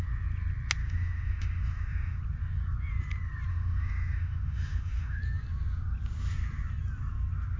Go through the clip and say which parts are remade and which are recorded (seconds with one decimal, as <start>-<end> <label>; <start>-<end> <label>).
0.0-0.8 recorded; 0.8-2.2 remade; 2.2-3.5 recorded; 3.5-5.2 remade; 5.2-7.6 recorded